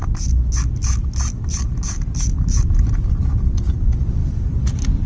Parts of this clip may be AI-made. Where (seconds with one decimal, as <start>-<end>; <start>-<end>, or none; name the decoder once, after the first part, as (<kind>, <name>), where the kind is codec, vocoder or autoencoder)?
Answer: none